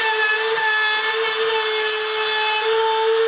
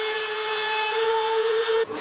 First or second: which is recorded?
first